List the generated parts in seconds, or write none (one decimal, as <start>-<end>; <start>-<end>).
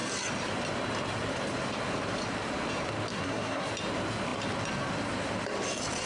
3.1-3.7